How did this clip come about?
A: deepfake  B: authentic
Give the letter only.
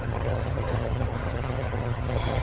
A